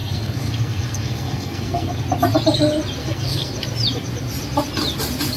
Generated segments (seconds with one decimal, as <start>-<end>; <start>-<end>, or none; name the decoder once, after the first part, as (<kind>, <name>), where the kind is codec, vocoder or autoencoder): 0.0-2.0 (codec, SNAC); 3.0-3.5